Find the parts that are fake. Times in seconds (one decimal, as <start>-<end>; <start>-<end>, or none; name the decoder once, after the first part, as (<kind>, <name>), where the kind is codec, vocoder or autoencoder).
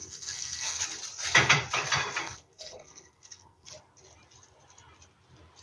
0.0-0.8 (codec, SNAC); 2.2-3.7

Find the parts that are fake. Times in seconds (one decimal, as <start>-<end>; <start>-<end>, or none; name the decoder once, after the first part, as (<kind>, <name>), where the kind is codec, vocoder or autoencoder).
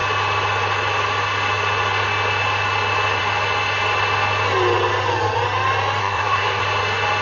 6.0-6.6 (codec, SNAC)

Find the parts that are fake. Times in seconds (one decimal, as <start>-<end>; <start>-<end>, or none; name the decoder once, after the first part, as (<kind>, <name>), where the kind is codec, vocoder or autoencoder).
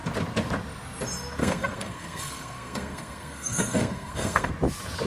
1.4-4.5 (codec, SNAC)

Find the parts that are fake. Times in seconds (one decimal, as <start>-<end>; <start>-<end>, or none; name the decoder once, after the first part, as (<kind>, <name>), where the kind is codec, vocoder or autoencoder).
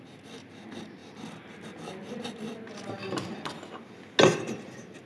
none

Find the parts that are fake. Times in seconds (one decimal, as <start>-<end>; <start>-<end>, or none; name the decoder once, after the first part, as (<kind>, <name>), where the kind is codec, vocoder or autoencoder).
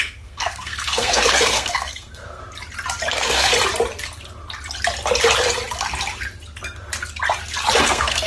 0.0-2.4 (codec, SNAC); 3.1-3.5; 7.8-8.3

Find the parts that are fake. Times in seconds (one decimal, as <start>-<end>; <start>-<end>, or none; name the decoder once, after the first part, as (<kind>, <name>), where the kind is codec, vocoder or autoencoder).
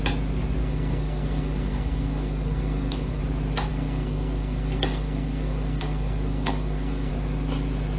0.6-3.2 (codec, SNAC); 3.7-7.1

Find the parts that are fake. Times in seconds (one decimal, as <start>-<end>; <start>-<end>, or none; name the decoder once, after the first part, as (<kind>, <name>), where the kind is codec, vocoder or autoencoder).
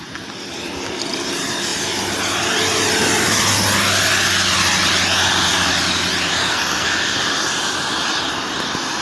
6.4-7.2 (codec, SNAC)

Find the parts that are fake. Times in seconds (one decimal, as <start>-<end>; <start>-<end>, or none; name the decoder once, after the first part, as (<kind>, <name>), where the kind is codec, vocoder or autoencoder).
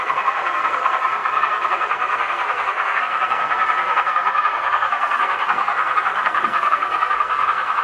0.0-7.8 (codec, SNAC)